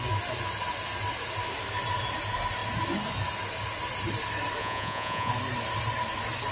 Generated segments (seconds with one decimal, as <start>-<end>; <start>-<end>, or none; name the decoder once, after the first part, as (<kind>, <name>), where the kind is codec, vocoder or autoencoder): 4.6-5.3 (vocoder, Vocos)